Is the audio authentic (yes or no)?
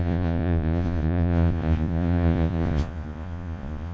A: no